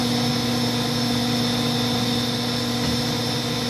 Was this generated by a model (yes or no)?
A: no